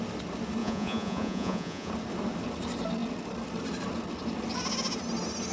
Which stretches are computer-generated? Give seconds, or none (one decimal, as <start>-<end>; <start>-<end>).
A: 0.6-1.9